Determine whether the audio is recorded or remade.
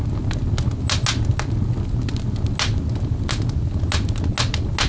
recorded